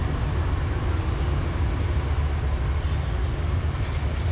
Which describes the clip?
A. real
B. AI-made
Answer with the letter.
A